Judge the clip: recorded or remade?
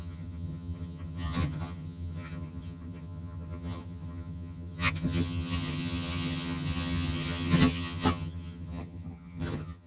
remade